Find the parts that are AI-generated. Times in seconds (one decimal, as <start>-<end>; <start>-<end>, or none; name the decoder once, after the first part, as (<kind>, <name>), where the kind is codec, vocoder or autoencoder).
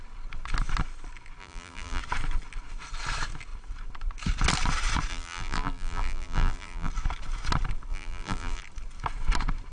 1.4-2.0 (vocoder, BigVGAN v2); 5.1-6.9; 7.9-8.6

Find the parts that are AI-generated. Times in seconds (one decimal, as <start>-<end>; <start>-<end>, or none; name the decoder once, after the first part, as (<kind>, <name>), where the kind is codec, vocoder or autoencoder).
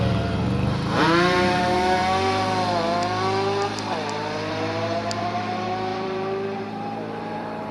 0.0-2.0 (vocoder, BigVGAN v2); 4.5-7.7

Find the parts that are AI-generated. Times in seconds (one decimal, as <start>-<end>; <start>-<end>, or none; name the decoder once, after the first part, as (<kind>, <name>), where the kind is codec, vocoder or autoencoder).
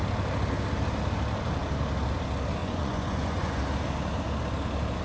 2.6-3.6 (vocoder, Vocos)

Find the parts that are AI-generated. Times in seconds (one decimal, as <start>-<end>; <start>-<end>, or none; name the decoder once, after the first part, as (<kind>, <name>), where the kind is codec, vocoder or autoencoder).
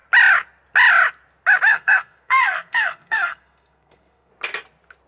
1.7-4.3 (codec, SNAC)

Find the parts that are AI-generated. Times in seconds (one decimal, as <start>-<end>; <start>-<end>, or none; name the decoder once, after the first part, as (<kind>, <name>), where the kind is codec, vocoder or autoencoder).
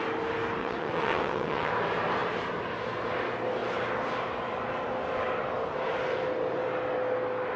0.6-1.7 (vocoder, WaveNeXt)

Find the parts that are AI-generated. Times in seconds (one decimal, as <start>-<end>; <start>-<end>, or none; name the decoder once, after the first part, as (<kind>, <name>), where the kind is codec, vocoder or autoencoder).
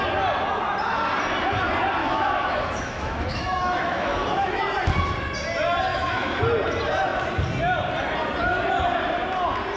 2.0-4.6 (autoencoder, DAC-VAE); 5.9-6.4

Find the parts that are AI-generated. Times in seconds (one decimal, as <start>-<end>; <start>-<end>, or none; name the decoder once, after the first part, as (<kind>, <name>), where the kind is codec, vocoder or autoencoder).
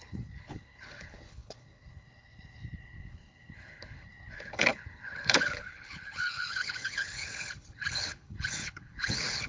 0.0-9.5 (codec, HILCodec)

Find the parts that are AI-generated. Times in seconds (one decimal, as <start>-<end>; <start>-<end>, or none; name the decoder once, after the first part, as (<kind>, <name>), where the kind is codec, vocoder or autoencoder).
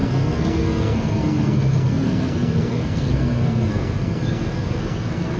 0.0-5.4 (codec, SNAC)